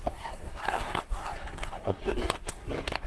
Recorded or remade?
remade